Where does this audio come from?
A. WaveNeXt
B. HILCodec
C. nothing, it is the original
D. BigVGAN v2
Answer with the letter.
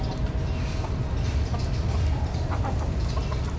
C